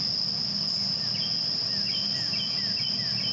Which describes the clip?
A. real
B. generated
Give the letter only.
A